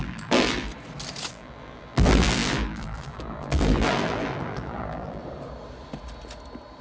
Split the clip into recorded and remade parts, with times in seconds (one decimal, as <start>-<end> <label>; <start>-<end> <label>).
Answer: 0.0-0.7 remade; 0.7-1.3 recorded; 1.3-5.2 remade; 5.2-6.8 recorded